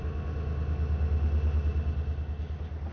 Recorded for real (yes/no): yes